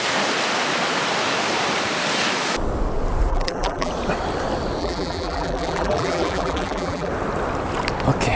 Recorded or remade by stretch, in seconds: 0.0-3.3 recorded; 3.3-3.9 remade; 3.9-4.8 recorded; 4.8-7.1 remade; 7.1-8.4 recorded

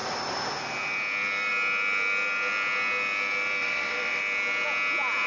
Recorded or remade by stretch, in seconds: 0.0-3.6 recorded; 3.6-4.2 remade; 4.2-5.3 recorded

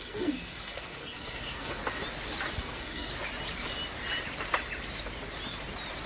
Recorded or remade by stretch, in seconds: 0.0-1.8 remade; 1.8-2.5 recorded; 2.5-3.1 remade; 3.1-6.1 recorded

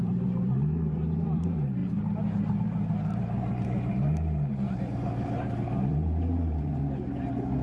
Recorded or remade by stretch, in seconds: 0.0-6.8 remade; 6.8-7.6 recorded

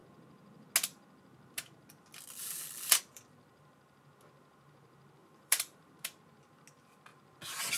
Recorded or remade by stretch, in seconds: 0.0-5.2 recorded; 5.2-5.9 remade; 5.9-7.8 recorded